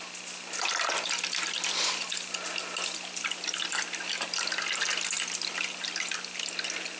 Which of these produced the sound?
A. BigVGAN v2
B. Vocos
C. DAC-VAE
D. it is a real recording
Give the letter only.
D